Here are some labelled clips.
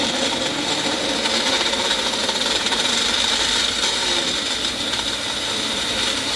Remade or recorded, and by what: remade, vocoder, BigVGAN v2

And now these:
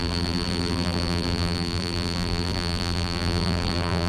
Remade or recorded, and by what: remade, vocoder, BigVGAN v2